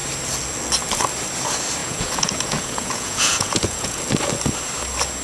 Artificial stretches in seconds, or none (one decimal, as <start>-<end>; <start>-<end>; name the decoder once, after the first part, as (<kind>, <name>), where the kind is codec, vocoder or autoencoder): 1.8-4.0 (vocoder, Vocos)